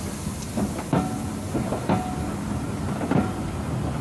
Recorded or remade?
recorded